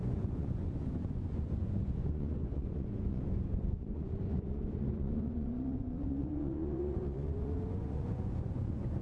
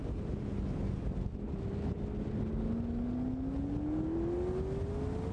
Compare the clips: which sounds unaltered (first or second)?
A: second